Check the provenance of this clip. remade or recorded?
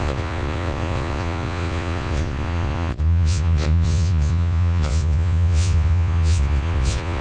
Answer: remade